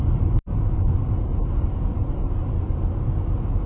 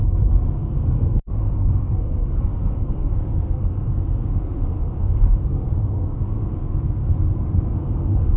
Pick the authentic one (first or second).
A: first